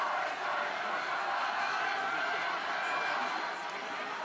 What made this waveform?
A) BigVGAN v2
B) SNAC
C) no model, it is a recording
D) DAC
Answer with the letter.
A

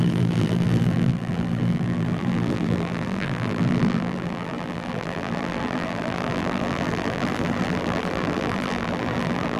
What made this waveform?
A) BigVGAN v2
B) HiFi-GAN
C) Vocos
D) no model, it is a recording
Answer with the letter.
A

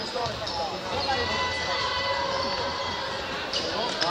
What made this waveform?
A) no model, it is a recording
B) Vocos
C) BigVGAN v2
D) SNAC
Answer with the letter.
C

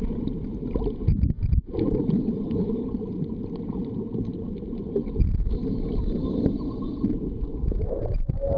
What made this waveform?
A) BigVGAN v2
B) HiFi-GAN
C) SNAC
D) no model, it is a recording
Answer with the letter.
D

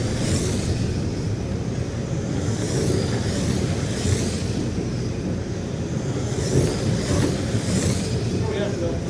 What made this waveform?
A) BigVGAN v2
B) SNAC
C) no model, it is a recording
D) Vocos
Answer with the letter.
C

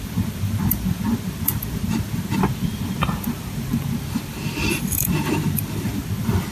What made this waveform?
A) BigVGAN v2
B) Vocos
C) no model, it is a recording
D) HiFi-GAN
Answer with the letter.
A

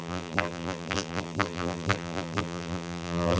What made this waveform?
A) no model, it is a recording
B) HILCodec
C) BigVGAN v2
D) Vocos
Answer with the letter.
C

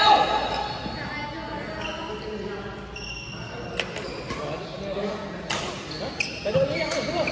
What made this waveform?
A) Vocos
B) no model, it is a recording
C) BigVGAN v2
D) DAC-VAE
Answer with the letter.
B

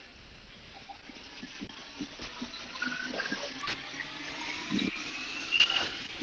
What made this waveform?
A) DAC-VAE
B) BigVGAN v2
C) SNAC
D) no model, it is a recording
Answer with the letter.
D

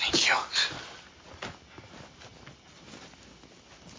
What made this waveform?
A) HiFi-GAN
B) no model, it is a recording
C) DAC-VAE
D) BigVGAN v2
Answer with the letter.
B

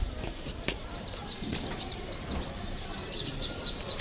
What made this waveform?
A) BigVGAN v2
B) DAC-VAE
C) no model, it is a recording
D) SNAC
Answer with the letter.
A